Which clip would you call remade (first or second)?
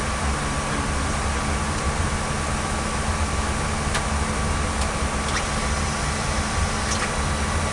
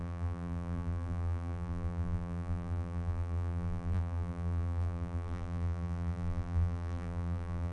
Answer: second